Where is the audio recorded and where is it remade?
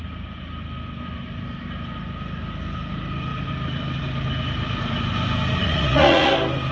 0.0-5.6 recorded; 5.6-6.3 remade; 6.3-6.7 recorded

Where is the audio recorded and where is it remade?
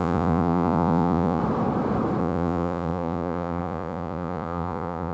0.0-1.4 remade; 1.4-2.2 recorded; 2.2-5.1 remade